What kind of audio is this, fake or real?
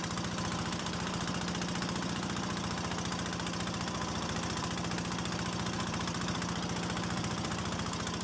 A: fake